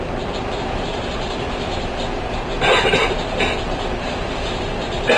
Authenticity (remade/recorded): recorded